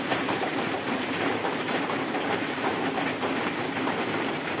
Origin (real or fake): fake